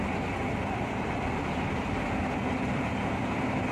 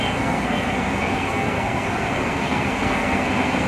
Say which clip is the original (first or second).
first